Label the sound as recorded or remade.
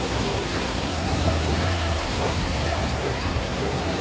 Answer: remade